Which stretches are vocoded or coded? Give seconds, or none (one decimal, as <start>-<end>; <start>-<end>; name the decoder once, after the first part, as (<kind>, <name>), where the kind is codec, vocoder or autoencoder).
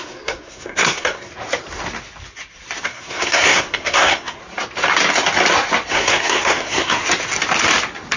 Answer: 0.0-1.3 (codec, SNAC); 2.8-4.4; 5.9-7.0